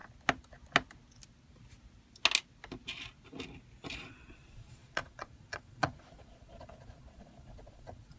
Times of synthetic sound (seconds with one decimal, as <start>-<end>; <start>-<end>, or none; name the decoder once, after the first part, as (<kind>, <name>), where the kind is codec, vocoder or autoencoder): 4.1-8.2 (vocoder, Vocos)